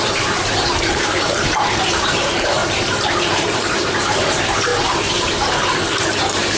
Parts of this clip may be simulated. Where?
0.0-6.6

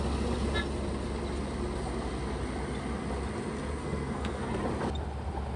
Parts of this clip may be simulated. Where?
3.8-4.6

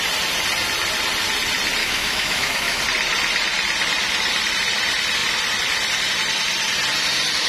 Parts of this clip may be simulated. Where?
1.8-2.8